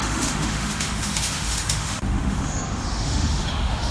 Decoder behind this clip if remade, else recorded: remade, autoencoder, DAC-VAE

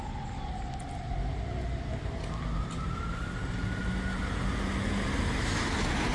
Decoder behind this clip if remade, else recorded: recorded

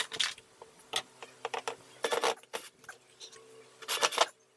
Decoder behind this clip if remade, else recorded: recorded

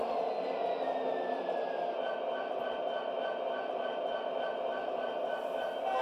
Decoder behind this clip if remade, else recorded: recorded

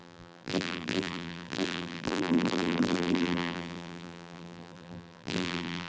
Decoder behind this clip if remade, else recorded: remade, vocoder, BigVGAN v2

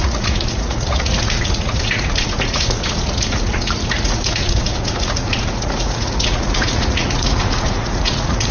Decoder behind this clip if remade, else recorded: remade, vocoder, Vocos